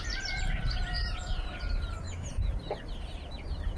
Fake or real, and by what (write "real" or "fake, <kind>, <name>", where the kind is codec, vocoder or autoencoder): fake, vocoder, BigVGAN v2